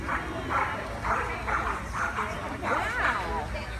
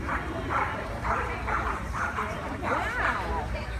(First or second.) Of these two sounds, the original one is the first